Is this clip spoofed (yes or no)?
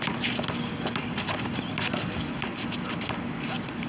no